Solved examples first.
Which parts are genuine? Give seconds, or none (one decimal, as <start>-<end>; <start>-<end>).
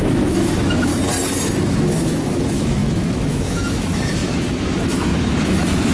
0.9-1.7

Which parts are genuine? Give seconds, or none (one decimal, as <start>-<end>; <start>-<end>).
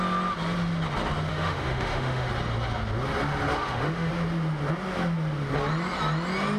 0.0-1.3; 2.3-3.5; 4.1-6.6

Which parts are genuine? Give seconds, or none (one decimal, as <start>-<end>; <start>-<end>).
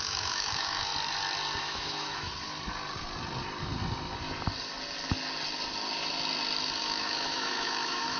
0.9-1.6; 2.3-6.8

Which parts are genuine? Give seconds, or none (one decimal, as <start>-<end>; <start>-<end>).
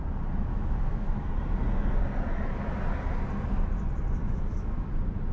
0.0-0.5; 1.3-4.2; 4.8-5.3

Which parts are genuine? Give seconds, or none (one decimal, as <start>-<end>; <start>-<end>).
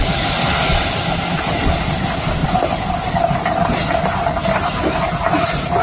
0.0-5.8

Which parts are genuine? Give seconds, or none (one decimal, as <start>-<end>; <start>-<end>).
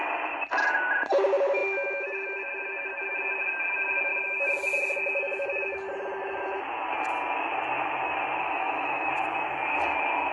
0.0-8.4; 9.1-10.3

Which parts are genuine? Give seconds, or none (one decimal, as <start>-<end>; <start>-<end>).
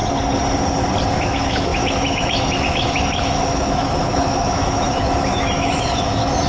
0.0-1.1